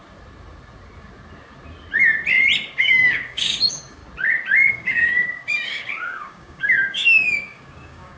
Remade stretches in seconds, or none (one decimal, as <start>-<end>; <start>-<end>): 2.8-4.0; 4.7-8.2